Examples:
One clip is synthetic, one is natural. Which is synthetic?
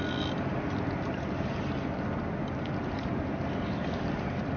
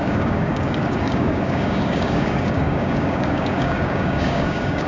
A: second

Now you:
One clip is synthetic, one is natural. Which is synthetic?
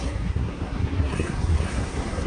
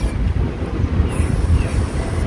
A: first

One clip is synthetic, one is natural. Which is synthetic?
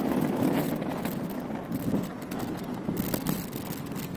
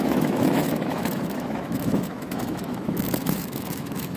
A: second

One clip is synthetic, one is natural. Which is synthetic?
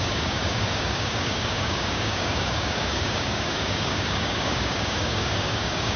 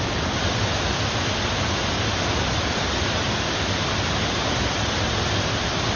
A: first